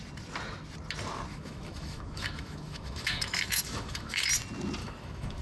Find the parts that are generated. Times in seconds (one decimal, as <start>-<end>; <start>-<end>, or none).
1.3-4.3; 4.8-5.4